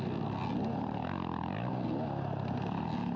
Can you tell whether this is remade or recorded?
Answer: recorded